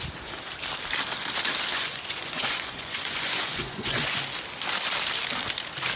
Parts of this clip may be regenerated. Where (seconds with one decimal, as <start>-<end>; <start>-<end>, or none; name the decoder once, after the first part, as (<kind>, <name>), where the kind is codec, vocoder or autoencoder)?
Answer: 1.7-4.2 (vocoder, Vocos)